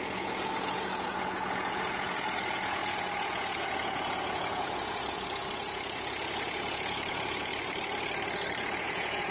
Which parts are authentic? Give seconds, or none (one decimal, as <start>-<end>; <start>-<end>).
7.5-8.6